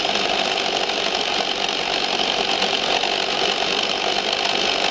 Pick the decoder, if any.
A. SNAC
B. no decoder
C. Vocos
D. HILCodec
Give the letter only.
B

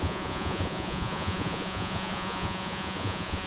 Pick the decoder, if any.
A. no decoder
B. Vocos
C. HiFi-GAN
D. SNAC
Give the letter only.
B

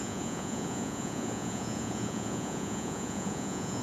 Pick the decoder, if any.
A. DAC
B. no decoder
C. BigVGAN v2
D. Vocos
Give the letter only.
D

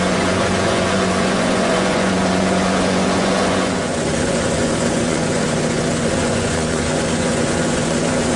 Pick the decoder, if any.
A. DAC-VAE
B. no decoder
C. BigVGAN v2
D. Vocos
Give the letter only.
D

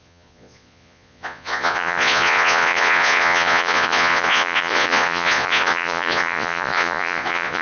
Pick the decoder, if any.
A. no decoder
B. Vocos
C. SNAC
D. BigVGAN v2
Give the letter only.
B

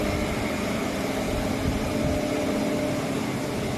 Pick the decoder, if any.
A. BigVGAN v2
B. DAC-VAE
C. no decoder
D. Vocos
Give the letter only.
C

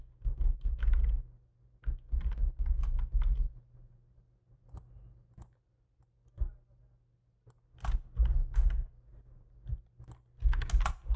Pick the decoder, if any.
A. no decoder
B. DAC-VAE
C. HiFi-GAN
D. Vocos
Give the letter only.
A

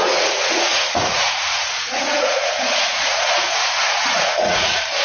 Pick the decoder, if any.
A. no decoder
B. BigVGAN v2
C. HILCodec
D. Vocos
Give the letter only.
D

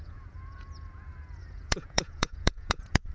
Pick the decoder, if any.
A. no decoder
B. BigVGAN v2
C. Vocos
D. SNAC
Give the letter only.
C